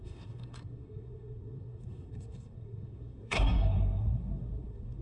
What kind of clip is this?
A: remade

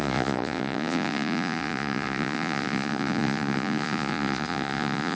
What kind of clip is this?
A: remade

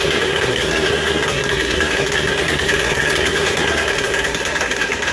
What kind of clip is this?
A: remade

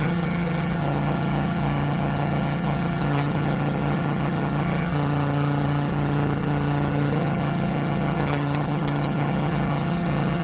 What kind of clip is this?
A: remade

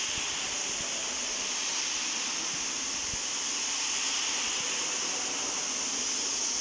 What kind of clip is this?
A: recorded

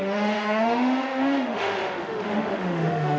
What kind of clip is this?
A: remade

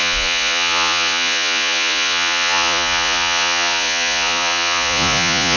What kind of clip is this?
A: remade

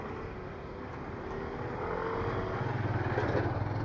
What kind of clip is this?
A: recorded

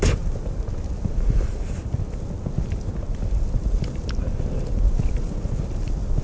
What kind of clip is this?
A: recorded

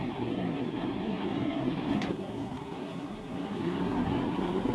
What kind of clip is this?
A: remade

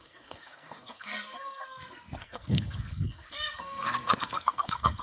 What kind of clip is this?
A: remade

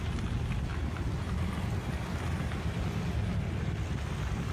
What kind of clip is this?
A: recorded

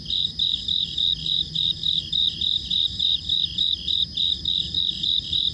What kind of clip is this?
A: remade